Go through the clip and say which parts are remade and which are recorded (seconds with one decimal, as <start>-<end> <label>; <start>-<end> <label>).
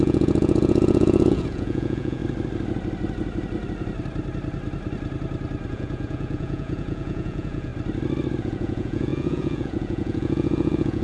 0.0-2.2 remade; 2.2-5.7 recorded; 5.7-7.7 remade; 7.7-8.4 recorded; 8.4-11.0 remade